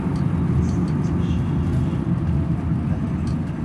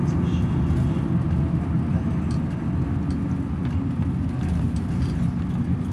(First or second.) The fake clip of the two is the first